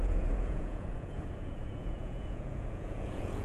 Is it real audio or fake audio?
fake